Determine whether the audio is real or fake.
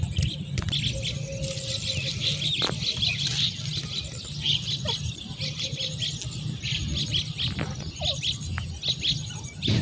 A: real